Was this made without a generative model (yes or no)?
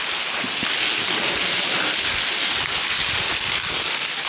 yes